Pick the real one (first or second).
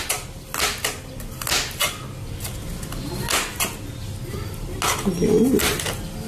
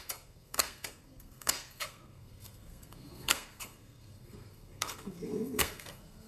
first